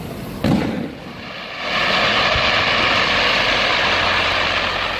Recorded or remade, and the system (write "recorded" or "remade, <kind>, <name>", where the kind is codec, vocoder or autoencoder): recorded